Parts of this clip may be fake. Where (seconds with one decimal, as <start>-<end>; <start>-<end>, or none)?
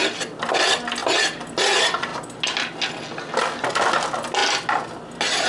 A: none